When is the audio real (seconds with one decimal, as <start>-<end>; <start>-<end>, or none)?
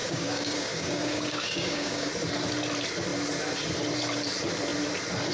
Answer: 2.1-5.3